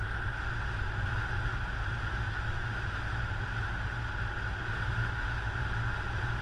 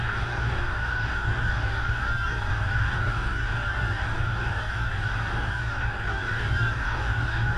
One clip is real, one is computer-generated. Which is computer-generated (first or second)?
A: second